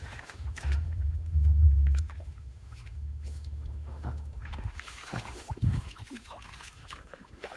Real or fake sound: fake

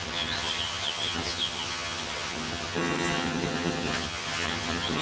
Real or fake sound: fake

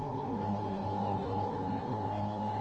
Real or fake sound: fake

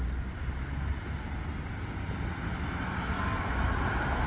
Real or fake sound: real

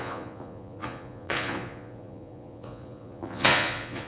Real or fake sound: fake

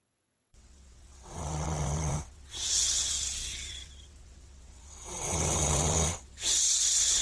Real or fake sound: fake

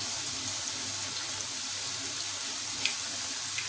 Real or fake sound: real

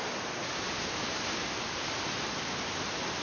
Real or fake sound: fake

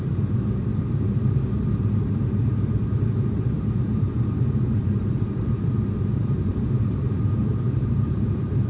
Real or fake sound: fake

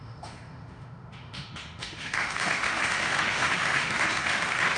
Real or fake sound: fake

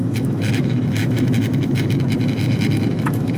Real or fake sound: fake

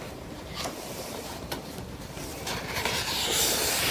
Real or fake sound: fake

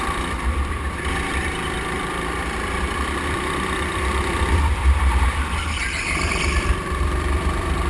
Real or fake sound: fake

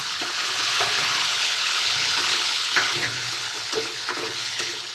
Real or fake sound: fake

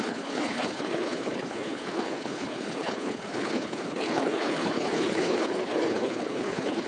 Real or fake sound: fake